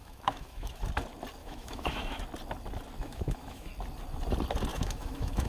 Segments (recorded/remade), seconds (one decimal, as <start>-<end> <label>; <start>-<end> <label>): 0.0-0.8 remade; 0.8-1.4 recorded; 1.4-2.2 remade; 2.2-3.0 recorded; 3.0-3.7 remade; 3.7-4.7 recorded; 4.7-5.5 remade